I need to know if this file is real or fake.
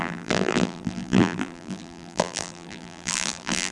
fake